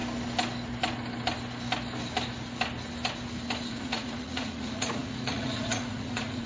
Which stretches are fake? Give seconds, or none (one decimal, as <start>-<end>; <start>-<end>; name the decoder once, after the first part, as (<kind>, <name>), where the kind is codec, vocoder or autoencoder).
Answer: 3.7-6.5 (vocoder, Vocos)